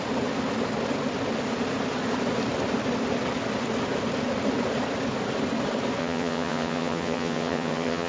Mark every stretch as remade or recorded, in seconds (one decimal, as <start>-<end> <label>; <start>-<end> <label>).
0.0-6.0 recorded; 6.0-8.1 remade